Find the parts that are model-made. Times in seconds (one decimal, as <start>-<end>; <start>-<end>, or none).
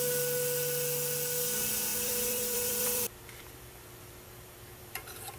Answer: 1.9-5.4